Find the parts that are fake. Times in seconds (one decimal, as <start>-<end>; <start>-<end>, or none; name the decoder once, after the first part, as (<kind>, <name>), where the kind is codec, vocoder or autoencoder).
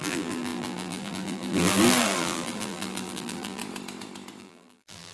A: 0.0-3.6 (vocoder, BigVGAN v2); 4.4-5.1